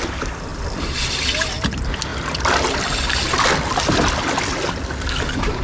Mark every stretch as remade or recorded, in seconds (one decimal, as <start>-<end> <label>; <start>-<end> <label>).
0.0-5.6 recorded

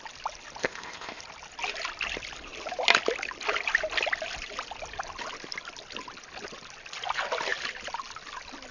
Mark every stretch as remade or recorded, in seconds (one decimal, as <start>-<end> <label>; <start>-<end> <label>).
0.0-0.6 recorded; 0.6-1.2 remade; 1.2-8.7 recorded

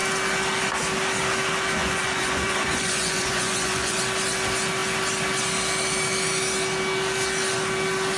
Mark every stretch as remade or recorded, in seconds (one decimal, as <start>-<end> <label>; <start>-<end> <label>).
0.0-1.8 recorded; 1.8-4.0 remade; 4.0-8.2 recorded

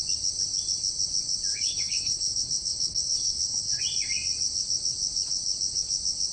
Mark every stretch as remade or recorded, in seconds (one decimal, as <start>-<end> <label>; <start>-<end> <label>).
0.0-1.5 recorded; 1.5-3.8 remade; 3.8-6.3 recorded

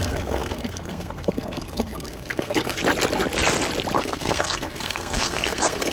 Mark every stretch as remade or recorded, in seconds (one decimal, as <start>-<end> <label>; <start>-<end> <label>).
0.0-2.8 remade; 2.8-4.0 recorded; 4.0-5.9 remade

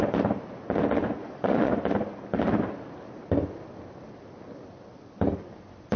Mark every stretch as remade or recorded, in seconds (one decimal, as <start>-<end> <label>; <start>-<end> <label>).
0.0-1.2 recorded; 1.2-1.7 remade; 1.7-6.0 recorded